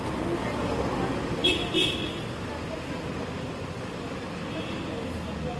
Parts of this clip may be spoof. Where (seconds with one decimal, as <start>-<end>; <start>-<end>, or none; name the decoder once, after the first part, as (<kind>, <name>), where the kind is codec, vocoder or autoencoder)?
none

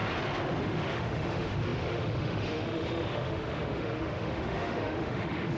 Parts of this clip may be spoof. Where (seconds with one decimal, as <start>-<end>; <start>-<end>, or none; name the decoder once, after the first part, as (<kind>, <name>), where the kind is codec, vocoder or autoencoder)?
0.6-5.6 (autoencoder, DAC-VAE)

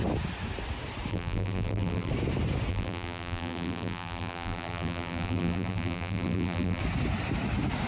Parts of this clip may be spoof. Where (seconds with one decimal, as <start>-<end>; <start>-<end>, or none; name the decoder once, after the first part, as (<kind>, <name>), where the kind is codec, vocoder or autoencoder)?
1.1-2.1 (vocoder, BigVGAN v2); 2.7-6.8

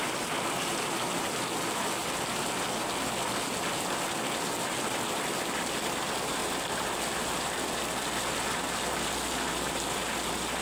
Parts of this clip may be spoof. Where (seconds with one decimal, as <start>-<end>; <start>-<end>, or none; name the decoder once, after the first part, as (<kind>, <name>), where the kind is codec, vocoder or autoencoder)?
6.4-7.8 (vocoder, BigVGAN v2)